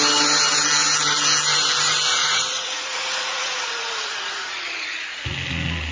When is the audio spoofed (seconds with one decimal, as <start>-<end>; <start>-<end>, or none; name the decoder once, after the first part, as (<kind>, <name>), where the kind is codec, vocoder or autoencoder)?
2.2-5.2 (vocoder, Vocos)